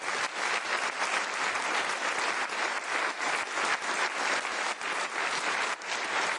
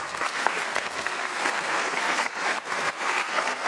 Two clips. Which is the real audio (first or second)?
first